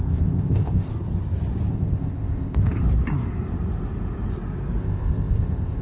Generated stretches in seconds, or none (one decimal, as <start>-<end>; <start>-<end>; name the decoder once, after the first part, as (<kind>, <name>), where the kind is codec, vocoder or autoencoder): 0.0-0.9 (codec, ZipCodec); 1.7-2.8; 4.8-5.8